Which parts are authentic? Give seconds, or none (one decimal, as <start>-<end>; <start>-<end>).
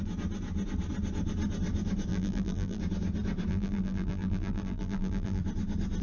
0.0-2.1; 2.8-3.5; 5.4-6.0